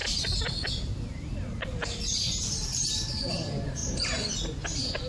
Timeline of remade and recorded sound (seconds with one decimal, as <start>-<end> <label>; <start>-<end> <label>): 0.0-5.1 recorded